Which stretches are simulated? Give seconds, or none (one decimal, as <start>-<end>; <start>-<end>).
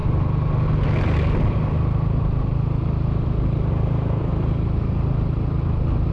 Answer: 3.7-4.3